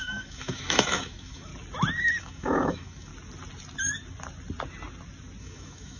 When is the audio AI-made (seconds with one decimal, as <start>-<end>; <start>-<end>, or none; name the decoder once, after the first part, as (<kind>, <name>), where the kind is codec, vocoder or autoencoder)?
0.0-1.5 (autoencoder, DAC-VAE); 2.2-3.1; 5.4-6.0